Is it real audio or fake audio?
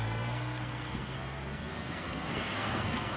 fake